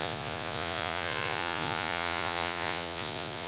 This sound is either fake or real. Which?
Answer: fake